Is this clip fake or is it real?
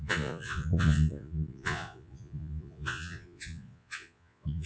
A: fake